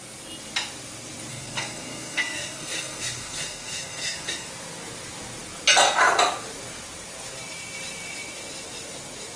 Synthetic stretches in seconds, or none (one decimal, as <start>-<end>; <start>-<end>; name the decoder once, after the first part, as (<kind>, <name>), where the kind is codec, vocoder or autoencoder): 1.3-4.5 (codec, SNAC)